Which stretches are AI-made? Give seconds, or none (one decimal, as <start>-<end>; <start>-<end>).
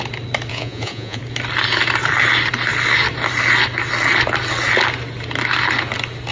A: 0.5-1.2